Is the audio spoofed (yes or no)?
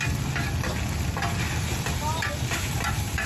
no